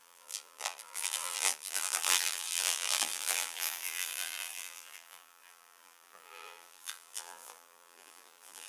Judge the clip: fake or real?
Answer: fake